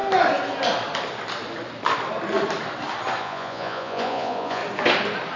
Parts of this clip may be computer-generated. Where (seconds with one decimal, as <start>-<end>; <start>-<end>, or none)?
3.2-4.6